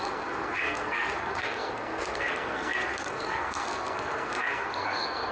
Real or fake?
fake